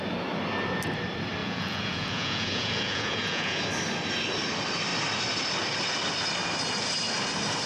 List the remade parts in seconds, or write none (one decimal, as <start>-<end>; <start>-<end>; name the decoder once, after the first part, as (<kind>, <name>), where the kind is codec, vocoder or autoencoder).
1.4-3.6 (vocoder, Vocos)